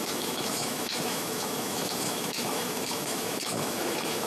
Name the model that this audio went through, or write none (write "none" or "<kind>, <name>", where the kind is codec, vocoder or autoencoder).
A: autoencoder, DAC-VAE